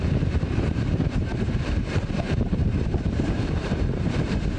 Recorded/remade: remade